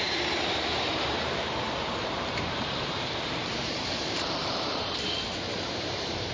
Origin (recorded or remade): remade